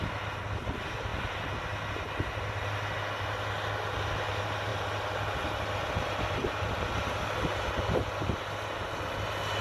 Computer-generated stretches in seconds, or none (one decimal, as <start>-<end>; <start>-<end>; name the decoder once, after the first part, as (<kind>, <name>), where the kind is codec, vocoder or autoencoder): none